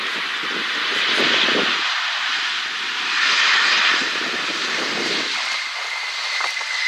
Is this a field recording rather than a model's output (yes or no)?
no